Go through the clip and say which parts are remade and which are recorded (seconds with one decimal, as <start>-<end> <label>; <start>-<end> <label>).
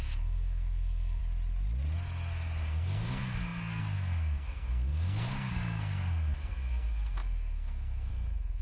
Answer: 0.0-1.2 remade; 1.2-2.6 recorded; 2.6-8.6 remade